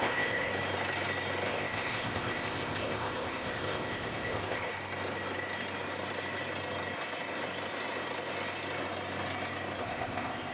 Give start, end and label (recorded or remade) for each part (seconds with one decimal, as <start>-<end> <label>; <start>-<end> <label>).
0.0-0.5 remade; 0.5-1.5 recorded; 1.5-4.7 remade; 4.7-9.8 recorded; 9.8-10.5 remade